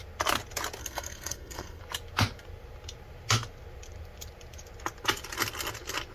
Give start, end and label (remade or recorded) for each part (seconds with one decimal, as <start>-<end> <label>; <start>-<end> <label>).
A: 0.0-0.8 recorded; 0.8-1.8 remade; 1.8-6.1 recorded